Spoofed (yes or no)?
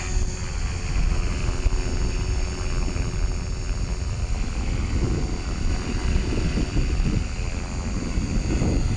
no